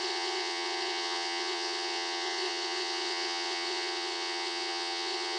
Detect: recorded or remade remade